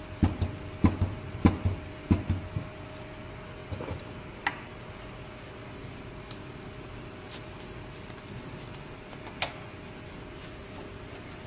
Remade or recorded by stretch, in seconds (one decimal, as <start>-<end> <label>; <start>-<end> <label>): 0.0-11.5 recorded